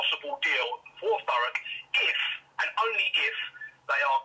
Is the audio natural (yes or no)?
yes